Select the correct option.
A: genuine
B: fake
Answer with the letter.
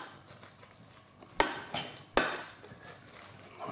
A